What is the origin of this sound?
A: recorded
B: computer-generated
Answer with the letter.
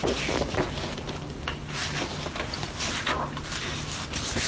A